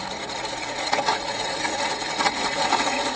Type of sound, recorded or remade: remade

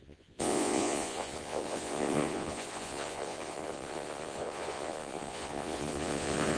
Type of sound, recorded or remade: remade